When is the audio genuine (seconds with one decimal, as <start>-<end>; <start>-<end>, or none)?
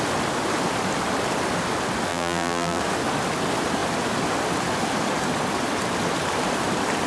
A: 0.0-2.1; 2.8-7.1